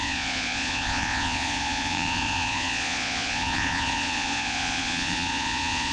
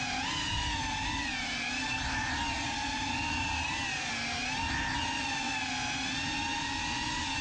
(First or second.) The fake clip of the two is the first